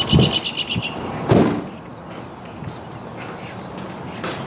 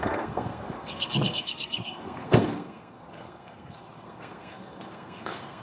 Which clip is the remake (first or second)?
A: second